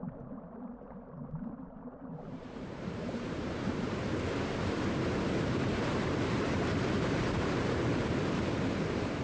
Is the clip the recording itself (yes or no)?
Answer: no